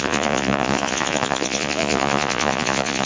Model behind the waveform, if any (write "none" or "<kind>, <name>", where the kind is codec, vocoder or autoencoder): vocoder, Vocos